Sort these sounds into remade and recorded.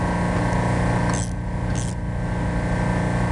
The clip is recorded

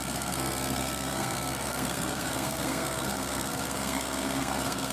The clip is remade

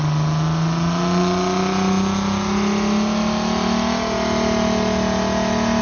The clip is recorded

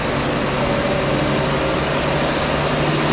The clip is recorded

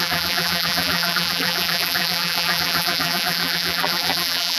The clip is remade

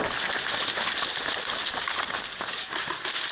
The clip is recorded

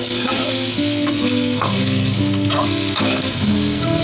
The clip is remade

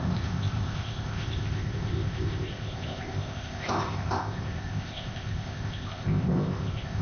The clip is remade